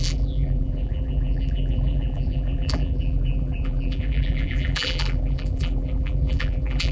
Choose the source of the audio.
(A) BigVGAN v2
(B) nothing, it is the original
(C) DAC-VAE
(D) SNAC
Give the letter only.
A